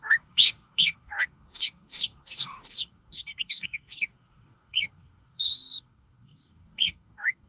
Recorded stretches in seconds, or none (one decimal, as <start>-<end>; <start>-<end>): none